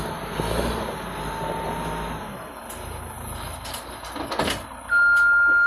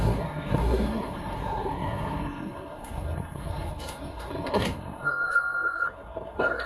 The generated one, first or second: second